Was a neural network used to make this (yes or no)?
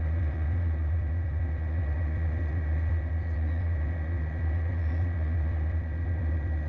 yes